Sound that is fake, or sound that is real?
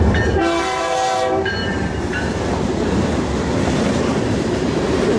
fake